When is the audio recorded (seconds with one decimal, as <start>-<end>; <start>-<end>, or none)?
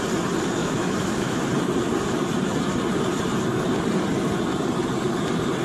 0.0-0.6; 1.4-5.6